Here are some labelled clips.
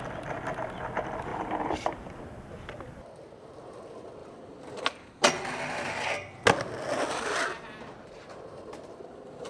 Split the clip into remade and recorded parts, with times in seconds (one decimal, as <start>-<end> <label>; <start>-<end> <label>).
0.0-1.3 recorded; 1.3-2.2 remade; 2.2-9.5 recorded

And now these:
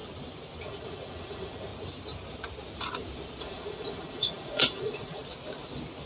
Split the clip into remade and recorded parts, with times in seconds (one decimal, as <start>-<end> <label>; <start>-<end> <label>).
0.0-0.6 recorded; 0.6-1.7 remade; 1.7-3.4 recorded; 3.4-5.2 remade; 5.2-6.1 recorded

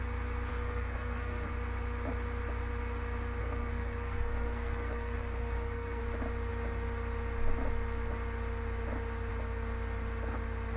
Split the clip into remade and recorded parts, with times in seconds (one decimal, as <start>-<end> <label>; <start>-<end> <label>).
0.0-0.5 recorded; 0.5-1.5 remade; 1.5-3.4 recorded; 3.4-6.0 remade; 6.0-10.8 recorded

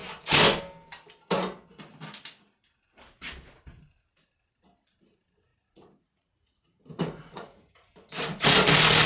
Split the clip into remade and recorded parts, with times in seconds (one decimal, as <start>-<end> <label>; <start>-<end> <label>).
0.0-5.5 recorded; 5.5-7.9 remade; 7.9-9.1 recorded

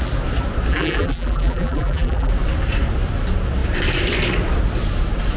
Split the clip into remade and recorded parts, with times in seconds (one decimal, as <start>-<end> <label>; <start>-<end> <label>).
0.0-0.7 recorded; 0.7-2.3 remade; 2.3-5.4 recorded